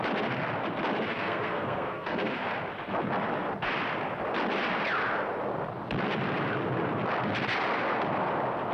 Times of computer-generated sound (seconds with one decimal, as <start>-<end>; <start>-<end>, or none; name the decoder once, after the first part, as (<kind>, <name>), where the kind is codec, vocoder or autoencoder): 1.1-2.5 (codec, SNAC)